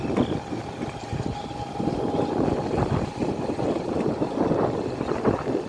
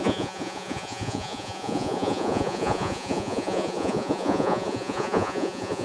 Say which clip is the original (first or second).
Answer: first